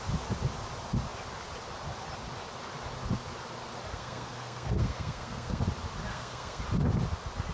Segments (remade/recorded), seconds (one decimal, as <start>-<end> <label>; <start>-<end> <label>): 0.0-3.9 recorded; 3.9-5.6 remade; 5.6-6.1 recorded; 6.1-6.6 remade; 6.6-7.5 recorded